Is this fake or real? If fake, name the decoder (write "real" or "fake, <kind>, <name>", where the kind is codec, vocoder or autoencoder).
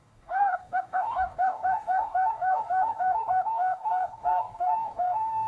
fake, codec, DAC